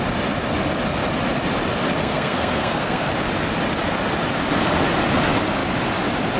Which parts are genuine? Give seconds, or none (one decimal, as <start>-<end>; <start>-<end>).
0.0-2.0; 3.1-6.4